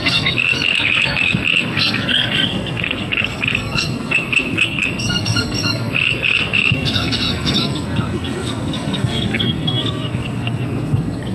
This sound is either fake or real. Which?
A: fake